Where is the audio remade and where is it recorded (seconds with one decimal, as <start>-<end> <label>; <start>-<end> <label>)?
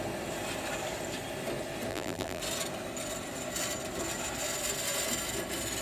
0.0-1.9 recorded; 1.9-2.4 remade; 2.4-5.8 recorded